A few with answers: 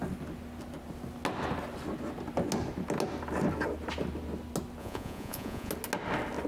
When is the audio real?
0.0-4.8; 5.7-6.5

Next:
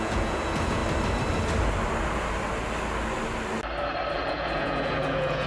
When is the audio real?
0.8-4.1